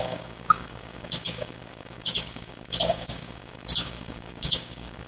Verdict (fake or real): fake